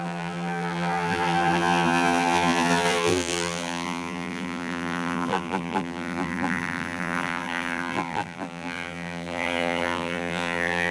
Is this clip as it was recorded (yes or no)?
no